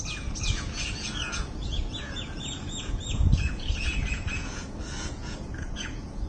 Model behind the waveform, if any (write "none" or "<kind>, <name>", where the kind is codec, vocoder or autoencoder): vocoder, Vocos